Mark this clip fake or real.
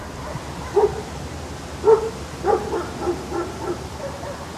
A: real